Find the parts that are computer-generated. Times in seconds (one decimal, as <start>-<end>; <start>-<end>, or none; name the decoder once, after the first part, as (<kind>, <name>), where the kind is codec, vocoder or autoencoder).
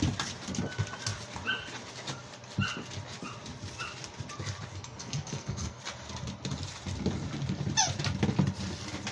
4.7-5.8 (codec, SNAC)